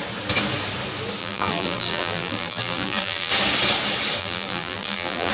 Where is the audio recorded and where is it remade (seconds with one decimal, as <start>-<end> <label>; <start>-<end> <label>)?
0.0-1.2 recorded; 1.2-3.3 remade; 3.3-4.2 recorded; 4.2-5.3 remade